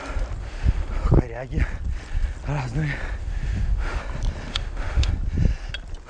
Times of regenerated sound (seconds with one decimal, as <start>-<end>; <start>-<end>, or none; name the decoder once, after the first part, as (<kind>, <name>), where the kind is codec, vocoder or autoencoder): 0.4-0.9 (autoencoder, DAC-VAE); 3.2-4.0; 4.5-5.1